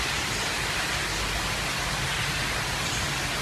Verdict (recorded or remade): recorded